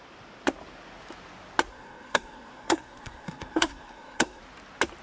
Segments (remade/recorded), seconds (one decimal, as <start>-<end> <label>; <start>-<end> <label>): 0.0-1.7 recorded; 1.7-4.4 remade; 4.4-5.0 recorded